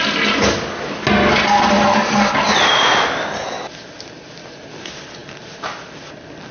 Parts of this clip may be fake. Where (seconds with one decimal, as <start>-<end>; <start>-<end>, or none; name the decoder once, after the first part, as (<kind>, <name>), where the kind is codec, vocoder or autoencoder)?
none